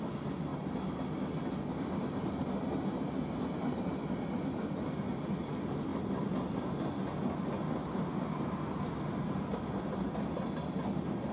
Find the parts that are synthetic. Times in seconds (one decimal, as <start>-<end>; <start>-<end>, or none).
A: none